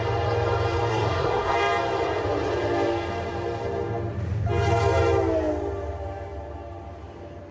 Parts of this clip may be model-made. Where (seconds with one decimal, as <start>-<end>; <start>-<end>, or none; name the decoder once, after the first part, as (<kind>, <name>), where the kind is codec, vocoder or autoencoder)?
0.9-1.5 (codec, SNAC)